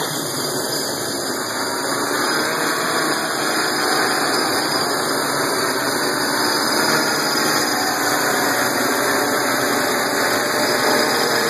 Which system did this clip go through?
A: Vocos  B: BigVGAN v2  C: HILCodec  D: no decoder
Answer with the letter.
B